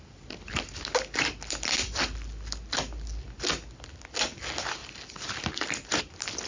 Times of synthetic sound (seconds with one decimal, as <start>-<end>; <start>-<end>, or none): none